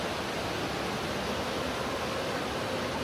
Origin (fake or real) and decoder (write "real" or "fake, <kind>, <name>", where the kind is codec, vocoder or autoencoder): real